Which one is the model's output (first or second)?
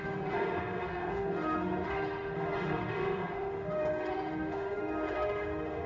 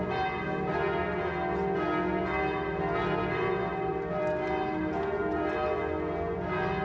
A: first